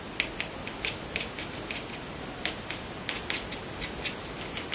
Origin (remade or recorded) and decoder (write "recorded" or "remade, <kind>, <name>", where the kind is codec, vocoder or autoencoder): recorded